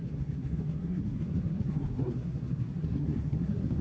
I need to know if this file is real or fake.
fake